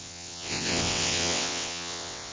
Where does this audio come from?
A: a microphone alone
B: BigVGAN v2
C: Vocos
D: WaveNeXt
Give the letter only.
D